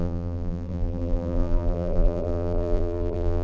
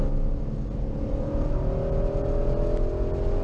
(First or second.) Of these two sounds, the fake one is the first